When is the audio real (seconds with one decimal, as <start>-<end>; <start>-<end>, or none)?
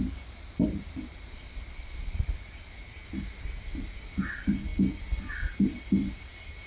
4.7-5.7